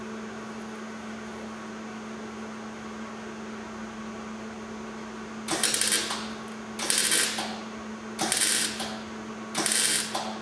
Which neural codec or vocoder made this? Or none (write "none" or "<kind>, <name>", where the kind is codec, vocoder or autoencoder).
none